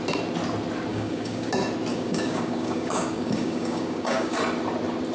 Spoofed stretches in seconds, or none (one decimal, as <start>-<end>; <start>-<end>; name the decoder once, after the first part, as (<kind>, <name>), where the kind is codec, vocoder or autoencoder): 0.9-1.5 (codec, DAC); 1.9-4.4